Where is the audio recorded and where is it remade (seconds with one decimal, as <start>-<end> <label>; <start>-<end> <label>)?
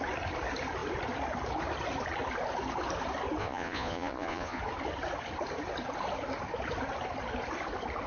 0.0-3.4 recorded; 3.4-4.6 remade; 4.6-8.1 recorded